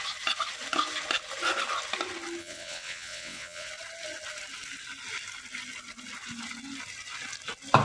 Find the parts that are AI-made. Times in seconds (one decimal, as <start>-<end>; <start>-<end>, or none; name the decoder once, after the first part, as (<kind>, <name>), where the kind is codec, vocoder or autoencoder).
2.4-3.7 (vocoder, WaveNeXt)